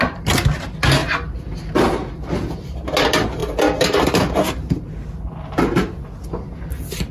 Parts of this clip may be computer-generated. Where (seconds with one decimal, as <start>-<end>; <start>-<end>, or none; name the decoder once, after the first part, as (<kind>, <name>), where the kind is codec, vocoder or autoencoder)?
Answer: none